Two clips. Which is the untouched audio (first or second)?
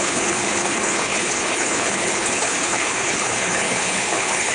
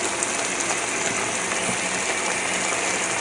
second